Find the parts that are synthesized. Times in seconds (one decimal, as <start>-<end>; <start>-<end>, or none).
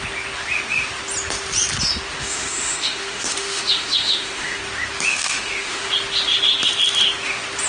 2.2-4.6; 5.1-5.9